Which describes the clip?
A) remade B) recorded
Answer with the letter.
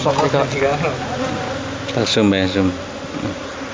B